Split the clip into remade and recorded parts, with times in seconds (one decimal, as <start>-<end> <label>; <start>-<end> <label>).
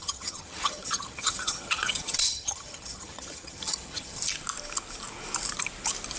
0.0-4.2 remade; 4.2-6.2 recorded